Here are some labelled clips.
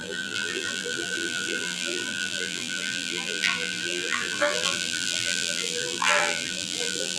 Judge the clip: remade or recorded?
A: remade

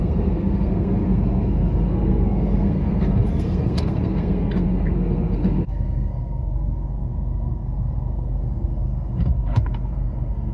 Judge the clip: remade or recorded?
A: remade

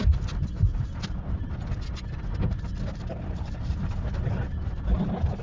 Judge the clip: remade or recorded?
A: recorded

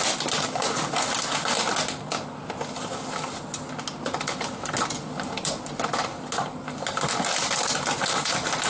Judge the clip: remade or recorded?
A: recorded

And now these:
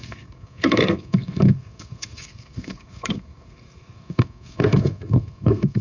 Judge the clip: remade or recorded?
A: remade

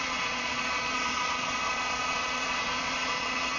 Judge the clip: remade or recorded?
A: remade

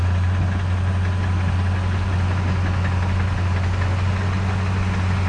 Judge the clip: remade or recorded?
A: recorded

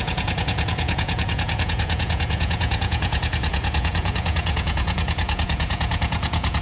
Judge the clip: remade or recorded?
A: remade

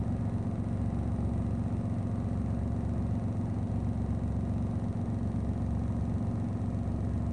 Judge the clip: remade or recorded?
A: recorded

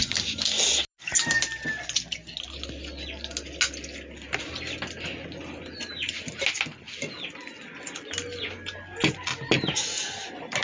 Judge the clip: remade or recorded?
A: recorded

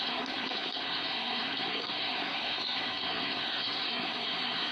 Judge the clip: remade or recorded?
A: remade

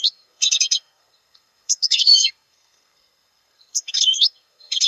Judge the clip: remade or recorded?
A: remade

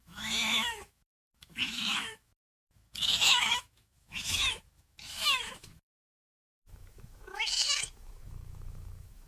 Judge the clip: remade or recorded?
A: remade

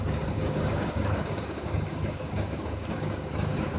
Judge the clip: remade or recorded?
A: remade